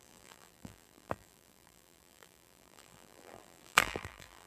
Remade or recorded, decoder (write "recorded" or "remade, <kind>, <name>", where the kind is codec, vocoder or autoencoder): remade, vocoder, BigVGAN v2